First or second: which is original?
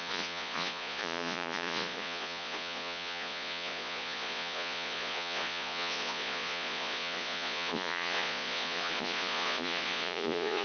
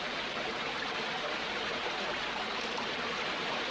second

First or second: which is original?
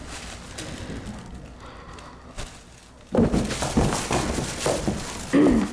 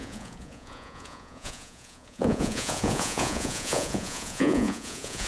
first